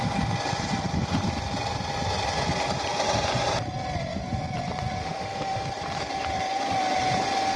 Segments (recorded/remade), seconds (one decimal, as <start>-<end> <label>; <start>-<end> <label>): 0.0-5.0 recorded; 5.0-5.7 remade; 5.7-7.6 recorded